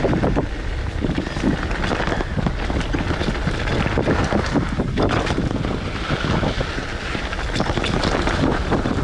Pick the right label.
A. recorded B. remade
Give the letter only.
A